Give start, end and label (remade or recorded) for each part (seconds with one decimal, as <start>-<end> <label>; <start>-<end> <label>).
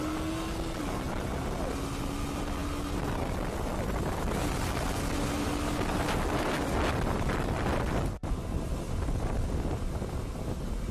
0.0-10.9 recorded